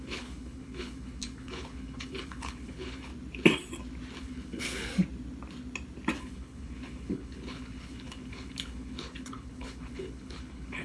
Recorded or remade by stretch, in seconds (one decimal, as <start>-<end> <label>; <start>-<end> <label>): 0.0-3.1 remade; 3.1-4.2 recorded; 4.2-4.9 remade; 4.9-6.2 recorded; 6.2-10.8 remade